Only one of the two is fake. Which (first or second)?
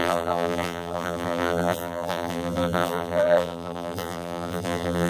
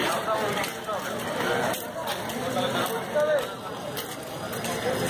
first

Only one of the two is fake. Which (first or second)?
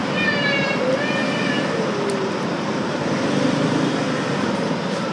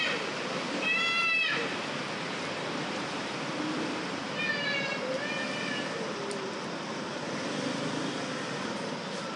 second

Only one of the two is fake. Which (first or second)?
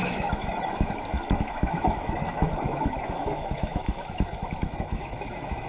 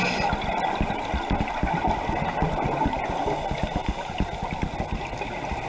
first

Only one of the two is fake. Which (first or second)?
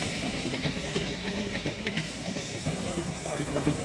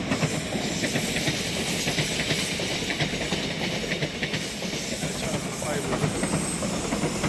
first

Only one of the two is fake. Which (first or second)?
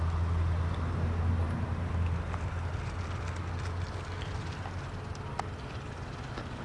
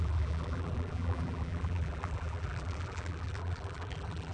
second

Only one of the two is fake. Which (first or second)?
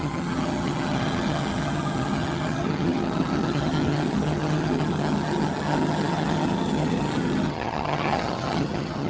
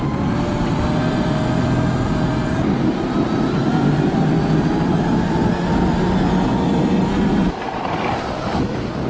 first